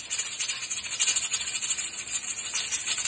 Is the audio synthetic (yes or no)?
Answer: no